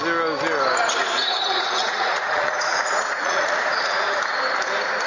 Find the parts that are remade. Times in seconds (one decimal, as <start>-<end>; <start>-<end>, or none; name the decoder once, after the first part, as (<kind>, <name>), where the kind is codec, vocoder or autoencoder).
1.1-4.2 (vocoder, Vocos)